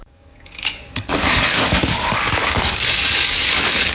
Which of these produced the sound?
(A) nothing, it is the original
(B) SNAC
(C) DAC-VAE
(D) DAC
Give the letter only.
D